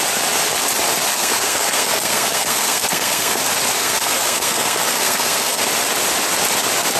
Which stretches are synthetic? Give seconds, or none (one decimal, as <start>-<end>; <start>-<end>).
1.1-3.4; 3.8-5.7